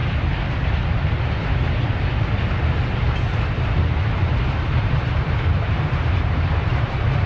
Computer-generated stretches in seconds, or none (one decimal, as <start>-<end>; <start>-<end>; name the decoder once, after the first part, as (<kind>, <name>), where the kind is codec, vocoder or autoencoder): 4.2-7.3 (vocoder, BigVGAN v2)